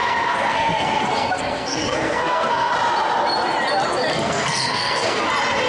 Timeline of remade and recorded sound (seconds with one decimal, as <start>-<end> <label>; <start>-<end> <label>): 0.0-2.7 remade; 2.7-4.1 recorded; 4.1-5.2 remade; 5.2-5.7 recorded